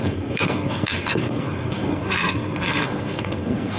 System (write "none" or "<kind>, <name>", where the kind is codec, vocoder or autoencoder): codec, SNAC